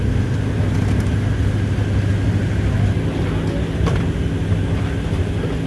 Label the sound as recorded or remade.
recorded